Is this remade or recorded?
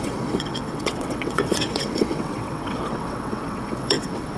remade